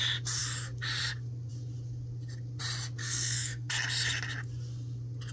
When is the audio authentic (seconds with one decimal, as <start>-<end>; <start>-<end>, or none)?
0.0-3.0; 3.7-5.3